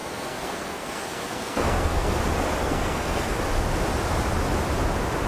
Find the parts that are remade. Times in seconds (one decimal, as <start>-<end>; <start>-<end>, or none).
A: 0.0-2.2; 2.6-3.4